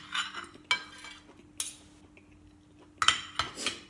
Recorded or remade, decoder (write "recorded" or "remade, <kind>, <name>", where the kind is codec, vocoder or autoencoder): recorded